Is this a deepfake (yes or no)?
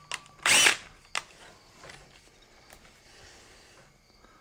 no